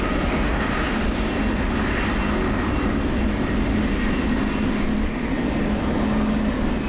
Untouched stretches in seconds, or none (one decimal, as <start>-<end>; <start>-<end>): 0.0-6.9